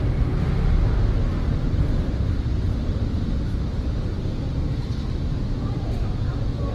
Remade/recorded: recorded